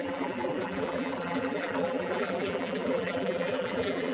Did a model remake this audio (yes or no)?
yes